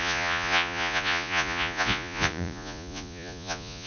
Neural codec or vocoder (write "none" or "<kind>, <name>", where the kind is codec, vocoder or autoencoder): vocoder, Vocos